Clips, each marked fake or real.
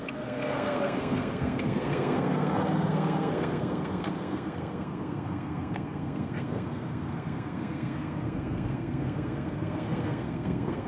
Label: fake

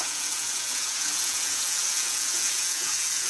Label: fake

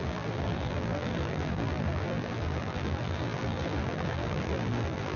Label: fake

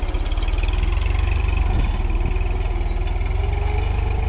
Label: real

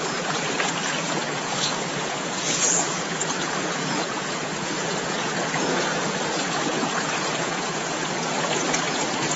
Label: fake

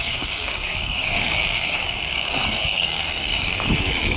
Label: fake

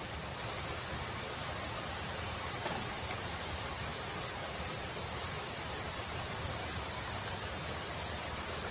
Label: real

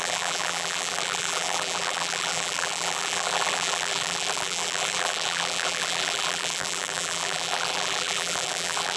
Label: fake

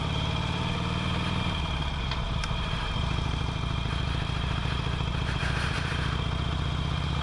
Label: fake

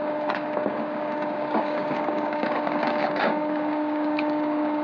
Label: fake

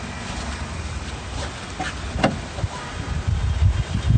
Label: real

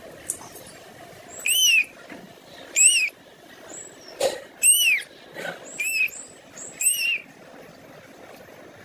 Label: real